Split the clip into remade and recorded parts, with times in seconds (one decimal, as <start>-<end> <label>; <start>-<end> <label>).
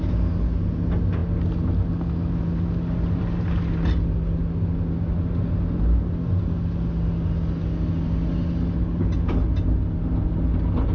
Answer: 0.0-10.9 recorded